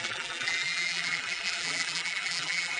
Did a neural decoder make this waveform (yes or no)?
yes